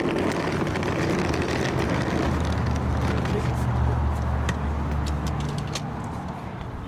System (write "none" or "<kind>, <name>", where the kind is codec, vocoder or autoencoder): none